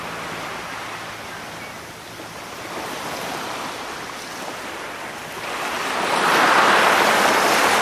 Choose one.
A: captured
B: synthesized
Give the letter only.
A